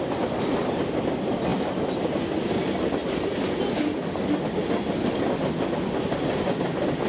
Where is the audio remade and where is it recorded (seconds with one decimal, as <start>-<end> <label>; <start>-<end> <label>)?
0.0-7.1 recorded